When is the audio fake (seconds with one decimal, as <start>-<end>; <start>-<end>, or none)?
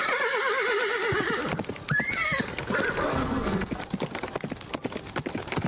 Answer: 3.1-3.8